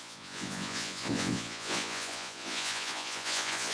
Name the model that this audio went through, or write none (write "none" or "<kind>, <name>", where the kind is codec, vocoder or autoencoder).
vocoder, Vocos